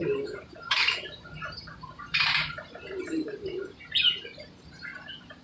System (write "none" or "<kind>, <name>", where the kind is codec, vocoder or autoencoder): vocoder, BigVGAN v2